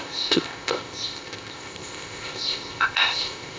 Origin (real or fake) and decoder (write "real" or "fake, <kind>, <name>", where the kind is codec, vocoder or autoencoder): fake, codec, ZipCodec